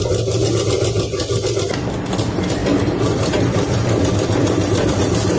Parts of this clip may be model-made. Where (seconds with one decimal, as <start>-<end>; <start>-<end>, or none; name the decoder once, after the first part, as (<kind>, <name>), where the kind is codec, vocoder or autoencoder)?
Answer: 2.6-5.0 (vocoder, BigVGAN v2)